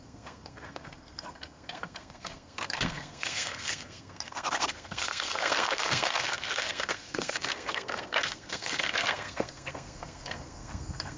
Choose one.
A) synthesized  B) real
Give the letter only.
A